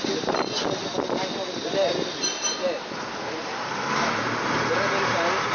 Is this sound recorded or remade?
recorded